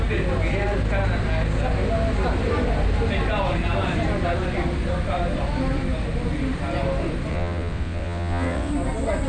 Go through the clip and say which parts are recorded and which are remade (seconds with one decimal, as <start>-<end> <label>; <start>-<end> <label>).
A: 0.0-7.3 recorded; 7.3-8.7 remade; 8.7-9.3 recorded